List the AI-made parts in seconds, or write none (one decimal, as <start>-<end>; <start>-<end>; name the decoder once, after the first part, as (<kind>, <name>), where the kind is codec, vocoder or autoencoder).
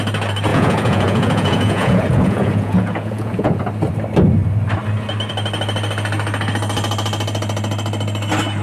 0.5-3.6 (vocoder, Vocos)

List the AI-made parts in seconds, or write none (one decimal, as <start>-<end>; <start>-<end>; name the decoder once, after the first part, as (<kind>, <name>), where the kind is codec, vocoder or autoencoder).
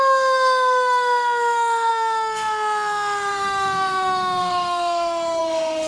0.0-5.9 (autoencoder, DAC-VAE)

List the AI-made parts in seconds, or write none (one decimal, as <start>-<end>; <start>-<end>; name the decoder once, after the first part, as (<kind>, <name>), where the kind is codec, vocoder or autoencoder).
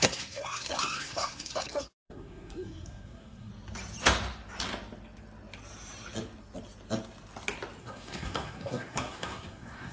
0.0-3.5 (codec, SNAC); 7.8-9.9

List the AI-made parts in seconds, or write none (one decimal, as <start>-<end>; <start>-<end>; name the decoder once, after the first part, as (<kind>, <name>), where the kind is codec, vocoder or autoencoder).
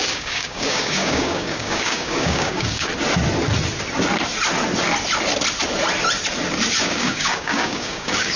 0.0-2.9 (codec, DAC); 6.8-8.4